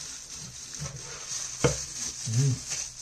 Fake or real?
real